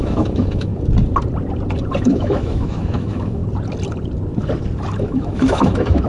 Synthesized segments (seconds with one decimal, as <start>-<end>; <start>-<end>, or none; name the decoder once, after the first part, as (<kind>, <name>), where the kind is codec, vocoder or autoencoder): 0.0-0.7 (autoencoder, DAC-VAE); 2.0-3.4; 5.0-6.1